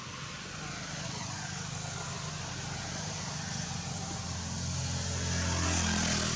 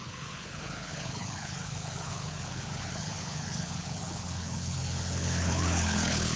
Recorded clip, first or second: first